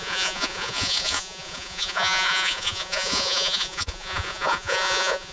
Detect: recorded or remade remade